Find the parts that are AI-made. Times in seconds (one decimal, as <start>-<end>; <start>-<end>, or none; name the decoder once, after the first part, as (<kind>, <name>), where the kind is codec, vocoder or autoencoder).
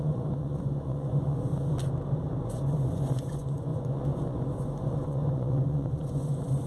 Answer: 0.0-1.5 (vocoder, Vocos); 2.4-6.7